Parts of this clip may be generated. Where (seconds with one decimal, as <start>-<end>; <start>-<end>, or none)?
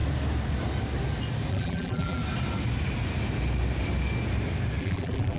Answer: 1.5-2.2; 4.8-5.4